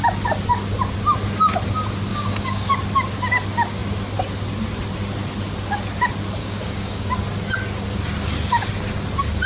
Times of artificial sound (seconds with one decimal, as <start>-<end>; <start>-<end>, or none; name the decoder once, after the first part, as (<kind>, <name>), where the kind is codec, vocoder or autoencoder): 2.1-2.7 (codec, DAC); 6.4-7.1